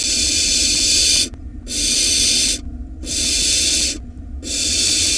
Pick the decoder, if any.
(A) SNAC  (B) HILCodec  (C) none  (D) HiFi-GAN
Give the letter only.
C